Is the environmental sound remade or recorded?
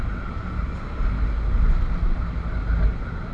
recorded